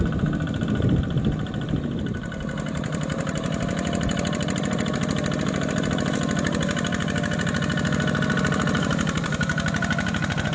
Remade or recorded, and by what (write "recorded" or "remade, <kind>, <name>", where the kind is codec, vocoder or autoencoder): remade, vocoder, BigVGAN v2